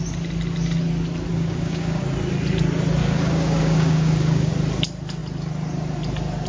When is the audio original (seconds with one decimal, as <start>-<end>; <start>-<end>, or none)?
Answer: 0.0-1.3; 2.0-3.0; 4.5-6.5